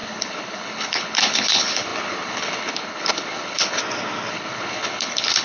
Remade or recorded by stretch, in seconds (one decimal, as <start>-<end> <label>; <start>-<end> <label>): 0.0-3.8 remade; 3.8-4.3 recorded; 4.3-5.4 remade